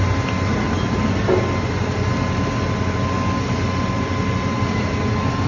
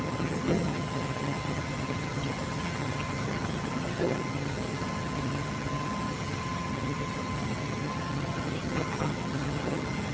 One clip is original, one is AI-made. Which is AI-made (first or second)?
second